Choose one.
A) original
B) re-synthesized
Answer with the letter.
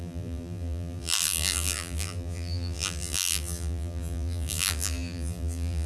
B